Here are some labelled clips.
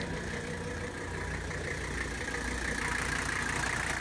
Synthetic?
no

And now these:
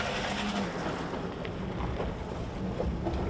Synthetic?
no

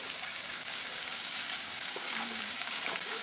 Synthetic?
yes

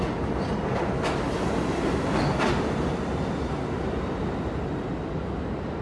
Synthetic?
no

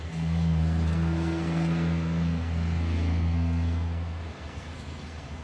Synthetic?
yes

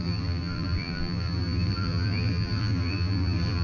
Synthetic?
yes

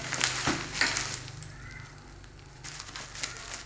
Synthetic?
no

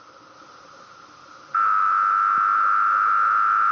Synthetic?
no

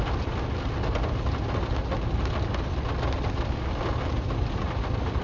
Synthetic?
no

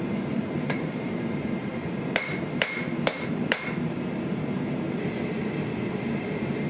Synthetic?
yes